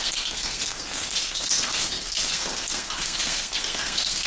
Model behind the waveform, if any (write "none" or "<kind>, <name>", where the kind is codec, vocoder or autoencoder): codec, SNAC